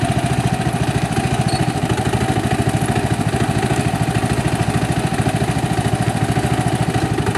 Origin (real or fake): real